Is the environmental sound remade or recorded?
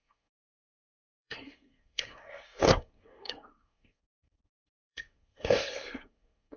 remade